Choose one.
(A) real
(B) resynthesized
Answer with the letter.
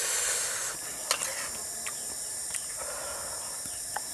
A